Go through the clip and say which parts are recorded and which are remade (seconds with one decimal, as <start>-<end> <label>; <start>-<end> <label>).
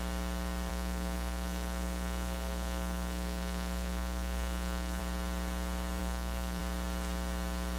0.0-0.7 recorded; 0.7-5.0 remade; 5.0-6.0 recorded; 6.0-6.6 remade; 6.6-7.8 recorded